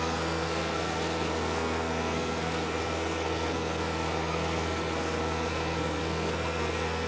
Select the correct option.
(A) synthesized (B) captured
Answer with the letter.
A